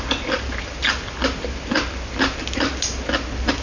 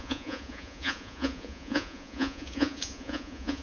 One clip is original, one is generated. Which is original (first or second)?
first